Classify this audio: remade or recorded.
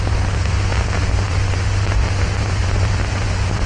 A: remade